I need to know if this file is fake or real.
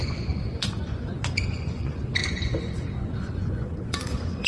fake